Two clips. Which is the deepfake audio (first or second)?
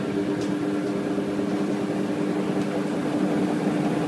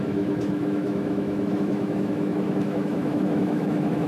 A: second